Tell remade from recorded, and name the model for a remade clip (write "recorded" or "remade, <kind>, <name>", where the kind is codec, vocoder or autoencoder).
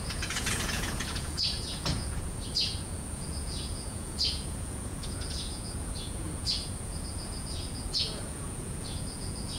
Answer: remade, vocoder, Vocos